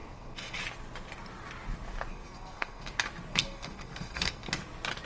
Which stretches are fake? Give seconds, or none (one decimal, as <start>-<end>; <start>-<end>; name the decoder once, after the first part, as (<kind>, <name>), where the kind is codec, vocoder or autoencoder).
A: 0.0-0.6 (codec, SNAC); 2.1-2.9; 3.3-4.5